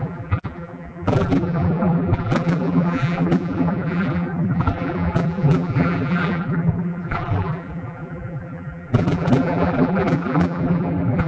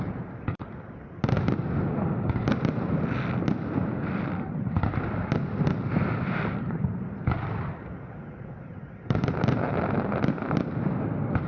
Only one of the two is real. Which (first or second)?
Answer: second